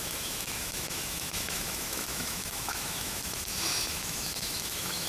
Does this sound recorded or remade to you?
remade